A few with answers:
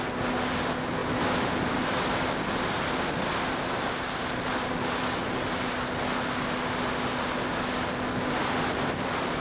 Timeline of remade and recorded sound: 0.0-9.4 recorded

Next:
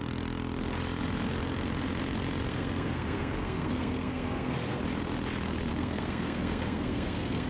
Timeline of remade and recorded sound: 0.0-2.5 recorded; 2.5-4.8 remade; 4.8-5.7 recorded; 5.7-7.5 remade